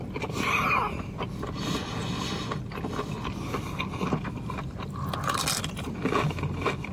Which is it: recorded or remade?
recorded